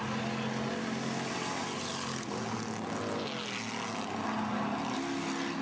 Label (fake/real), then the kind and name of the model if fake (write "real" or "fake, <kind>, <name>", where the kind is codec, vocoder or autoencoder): real